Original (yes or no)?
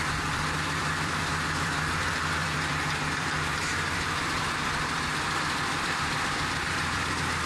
no